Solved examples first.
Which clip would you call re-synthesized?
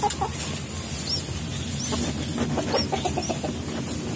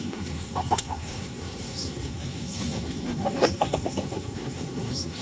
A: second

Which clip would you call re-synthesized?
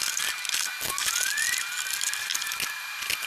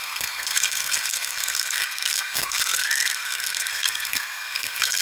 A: second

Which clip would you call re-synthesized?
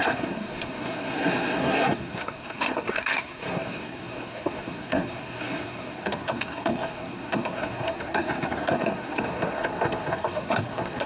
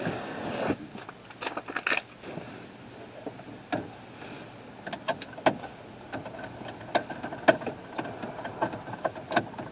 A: first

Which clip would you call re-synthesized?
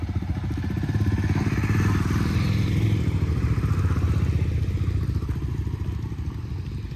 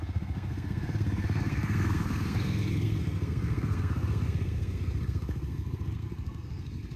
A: second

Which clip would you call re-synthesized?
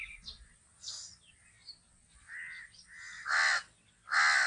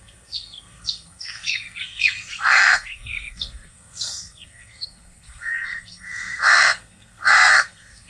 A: second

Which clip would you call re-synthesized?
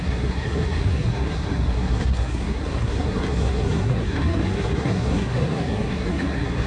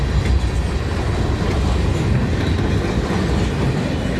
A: first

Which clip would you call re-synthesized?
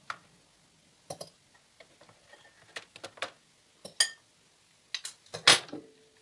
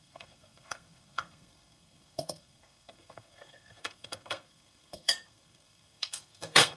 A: second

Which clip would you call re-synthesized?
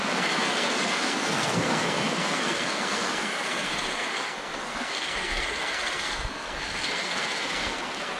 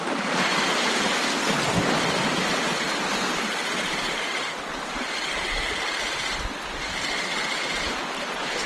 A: first